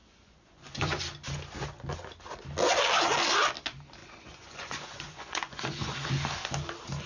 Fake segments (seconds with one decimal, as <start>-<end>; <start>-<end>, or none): 0.0-1.0; 4.0-6.1

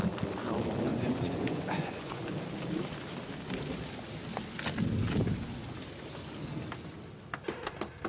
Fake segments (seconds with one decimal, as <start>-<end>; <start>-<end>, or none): 0.9-2.2

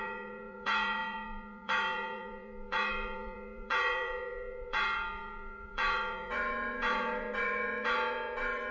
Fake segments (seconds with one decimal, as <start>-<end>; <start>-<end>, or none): 0.0-8.7

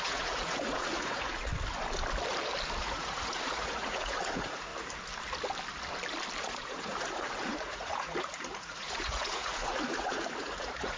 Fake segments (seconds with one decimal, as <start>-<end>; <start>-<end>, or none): 0.0-1.5; 2.8-4.7; 6.4-11.0

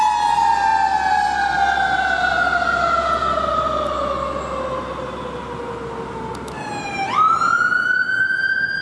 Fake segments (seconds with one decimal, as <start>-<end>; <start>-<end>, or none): none